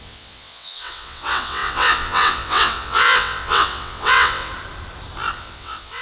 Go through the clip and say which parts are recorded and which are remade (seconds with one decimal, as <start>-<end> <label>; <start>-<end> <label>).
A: 0.0-4.5 remade; 4.5-5.4 recorded; 5.4-6.0 remade